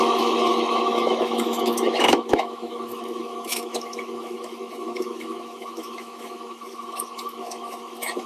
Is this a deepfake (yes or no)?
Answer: yes